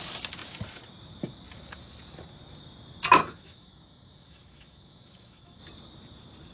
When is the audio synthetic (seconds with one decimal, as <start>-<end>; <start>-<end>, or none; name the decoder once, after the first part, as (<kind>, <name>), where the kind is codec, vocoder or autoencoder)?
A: 3.2-5.6 (autoencoder, DAC-VAE)